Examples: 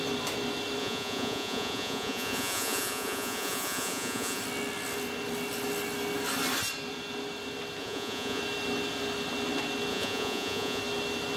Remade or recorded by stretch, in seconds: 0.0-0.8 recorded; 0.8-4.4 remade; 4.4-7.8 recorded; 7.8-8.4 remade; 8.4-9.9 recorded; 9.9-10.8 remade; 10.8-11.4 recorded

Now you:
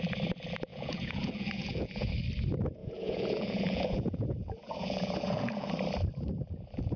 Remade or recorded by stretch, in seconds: 0.0-0.7 recorded; 0.7-2.1 remade; 2.1-2.8 recorded; 2.8-5.7 remade; 5.7-7.0 recorded

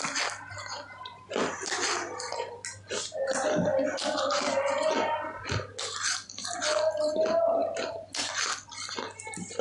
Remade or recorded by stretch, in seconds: 0.0-9.6 recorded